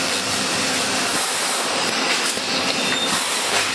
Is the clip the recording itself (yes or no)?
yes